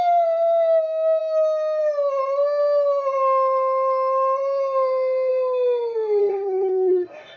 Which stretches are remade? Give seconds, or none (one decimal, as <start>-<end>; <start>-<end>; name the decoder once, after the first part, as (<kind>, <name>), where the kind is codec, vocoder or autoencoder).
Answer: 6.2-7.4 (codec, SNAC)